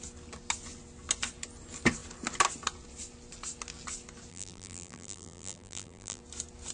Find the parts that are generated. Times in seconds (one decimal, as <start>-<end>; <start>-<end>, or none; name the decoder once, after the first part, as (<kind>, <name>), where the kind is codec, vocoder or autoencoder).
4.3-6.2 (vocoder, BigVGAN v2)